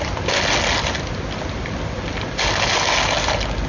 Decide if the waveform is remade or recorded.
recorded